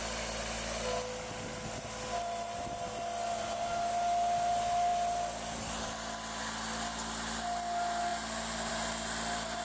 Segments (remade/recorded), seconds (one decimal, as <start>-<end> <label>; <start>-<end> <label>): 0.0-9.6 recorded